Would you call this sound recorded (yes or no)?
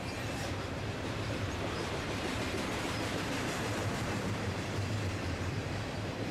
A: no